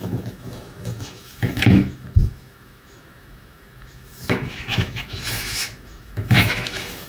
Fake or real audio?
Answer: fake